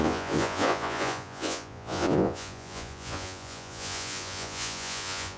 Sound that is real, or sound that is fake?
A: fake